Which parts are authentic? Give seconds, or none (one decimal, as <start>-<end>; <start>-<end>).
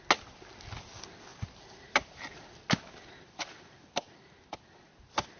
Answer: 0.0-5.4